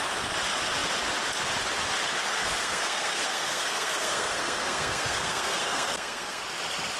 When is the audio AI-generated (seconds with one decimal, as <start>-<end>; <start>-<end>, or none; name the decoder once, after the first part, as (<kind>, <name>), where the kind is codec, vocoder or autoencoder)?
2.3-6.4 (codec, SNAC)